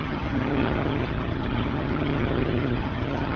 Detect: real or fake fake